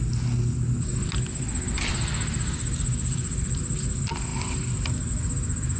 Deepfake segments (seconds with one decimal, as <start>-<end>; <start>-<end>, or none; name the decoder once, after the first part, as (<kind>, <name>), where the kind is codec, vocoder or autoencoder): none